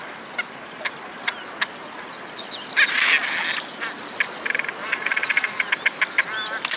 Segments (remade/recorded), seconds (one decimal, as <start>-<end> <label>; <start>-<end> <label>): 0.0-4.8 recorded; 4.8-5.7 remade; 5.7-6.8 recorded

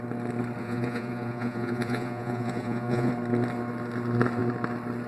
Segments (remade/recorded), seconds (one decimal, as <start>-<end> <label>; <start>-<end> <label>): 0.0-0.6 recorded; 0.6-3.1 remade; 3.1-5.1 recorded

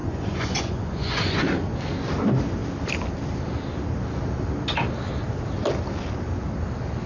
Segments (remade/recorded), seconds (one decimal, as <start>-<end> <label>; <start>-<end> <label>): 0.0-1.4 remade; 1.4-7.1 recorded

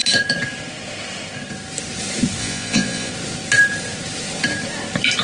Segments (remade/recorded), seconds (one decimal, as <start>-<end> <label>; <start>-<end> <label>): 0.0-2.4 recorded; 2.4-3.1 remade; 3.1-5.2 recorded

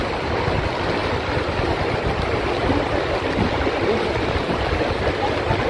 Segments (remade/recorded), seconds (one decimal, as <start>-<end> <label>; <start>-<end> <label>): 0.0-5.7 recorded

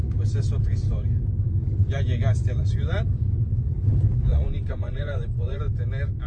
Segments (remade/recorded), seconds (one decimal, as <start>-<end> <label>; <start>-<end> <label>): 0.0-4.3 recorded; 4.3-5.6 remade; 5.6-6.3 recorded

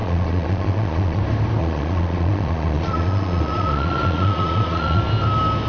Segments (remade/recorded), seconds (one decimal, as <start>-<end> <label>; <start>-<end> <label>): 0.0-1.2 remade; 1.2-1.6 recorded; 1.6-5.0 remade; 5.0-5.7 recorded